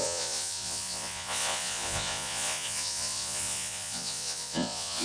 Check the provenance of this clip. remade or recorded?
remade